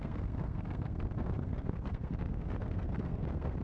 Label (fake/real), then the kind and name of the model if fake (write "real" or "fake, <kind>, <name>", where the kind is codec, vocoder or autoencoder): fake, codec, SNAC